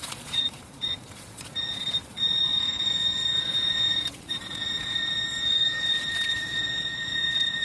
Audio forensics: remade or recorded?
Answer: remade